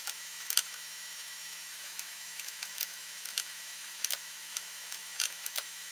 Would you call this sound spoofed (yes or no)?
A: yes